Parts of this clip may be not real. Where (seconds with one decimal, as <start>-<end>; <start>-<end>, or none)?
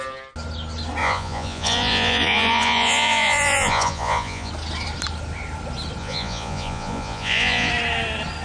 1.0-4.5; 6.0-7.7